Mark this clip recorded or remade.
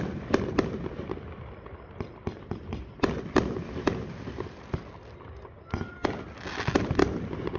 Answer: recorded